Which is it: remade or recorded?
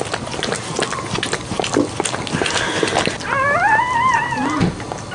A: recorded